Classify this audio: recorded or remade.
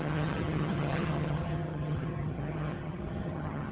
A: remade